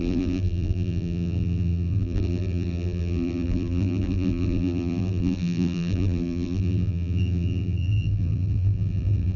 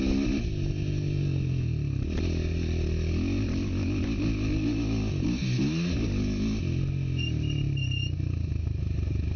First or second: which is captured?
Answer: second